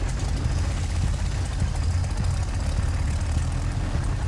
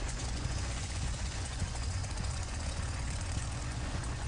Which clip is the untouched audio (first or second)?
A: first